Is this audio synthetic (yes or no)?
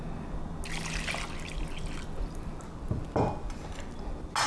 no